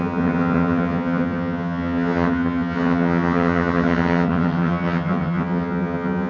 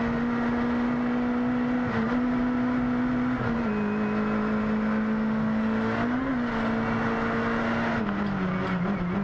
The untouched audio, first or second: second